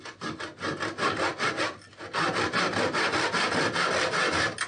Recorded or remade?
recorded